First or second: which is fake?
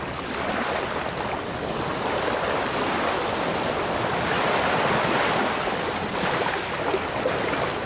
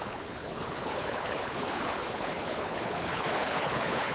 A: second